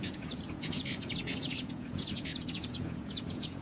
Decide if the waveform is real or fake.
fake